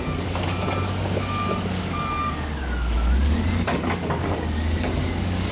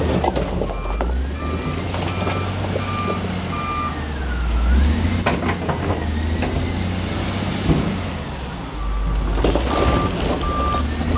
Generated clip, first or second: first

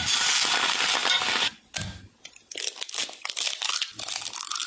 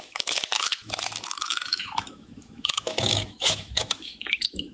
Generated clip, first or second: second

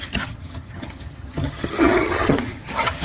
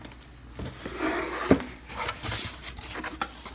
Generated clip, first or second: first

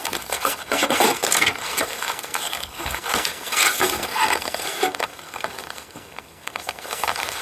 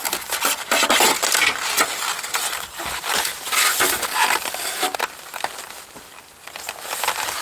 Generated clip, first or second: first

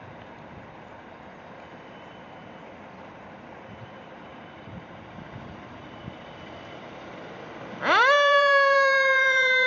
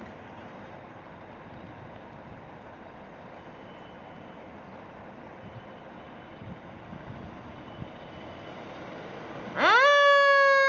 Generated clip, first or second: first